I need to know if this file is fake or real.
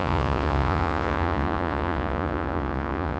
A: fake